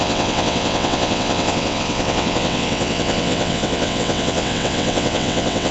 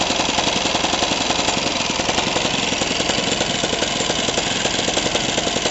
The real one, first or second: second